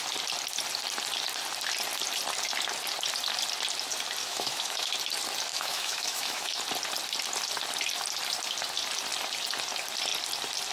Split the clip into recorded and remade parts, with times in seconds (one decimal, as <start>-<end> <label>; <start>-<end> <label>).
0.0-4.2 recorded; 4.2-4.9 remade; 4.9-5.5 recorded; 5.5-6.6 remade; 6.6-10.7 recorded